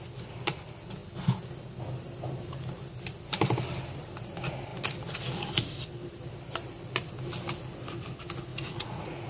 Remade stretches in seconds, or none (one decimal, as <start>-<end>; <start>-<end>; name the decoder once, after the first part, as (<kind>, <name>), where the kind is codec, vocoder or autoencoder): 8.5-9.3 (vocoder, Vocos)